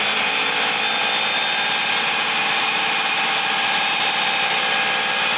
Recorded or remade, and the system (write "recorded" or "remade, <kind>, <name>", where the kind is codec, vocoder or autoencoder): recorded